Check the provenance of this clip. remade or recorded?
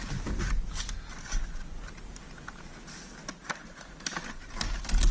recorded